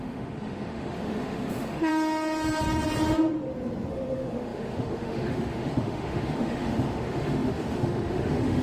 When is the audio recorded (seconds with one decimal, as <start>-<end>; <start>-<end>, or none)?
1.9-3.9